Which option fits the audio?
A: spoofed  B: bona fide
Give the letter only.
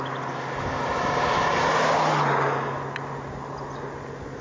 B